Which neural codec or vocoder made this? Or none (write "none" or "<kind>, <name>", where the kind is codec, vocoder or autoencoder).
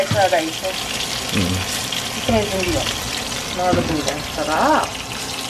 none